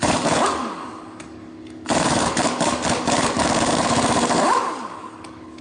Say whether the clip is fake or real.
fake